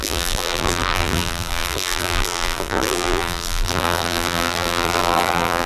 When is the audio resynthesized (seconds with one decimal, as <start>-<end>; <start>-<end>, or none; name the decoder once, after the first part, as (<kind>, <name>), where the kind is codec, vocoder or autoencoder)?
0.0-5.7 (vocoder, BigVGAN v2)